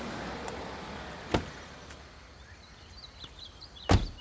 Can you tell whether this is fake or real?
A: real